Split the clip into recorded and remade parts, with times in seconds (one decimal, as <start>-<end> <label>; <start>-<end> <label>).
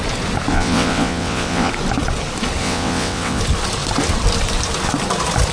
0.0-0.5 recorded; 0.5-1.7 remade; 1.7-2.6 recorded; 2.6-3.4 remade; 3.4-5.5 recorded